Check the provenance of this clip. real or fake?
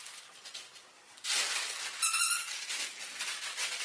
fake